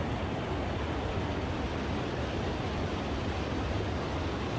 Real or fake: real